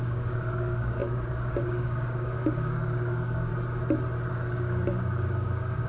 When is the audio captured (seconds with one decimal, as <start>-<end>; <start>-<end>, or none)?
3.5-4.3